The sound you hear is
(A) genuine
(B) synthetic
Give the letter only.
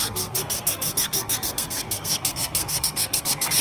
B